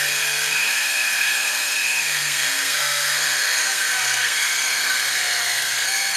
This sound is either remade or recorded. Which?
remade